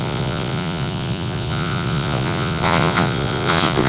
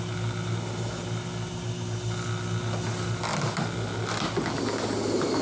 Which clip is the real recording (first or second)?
second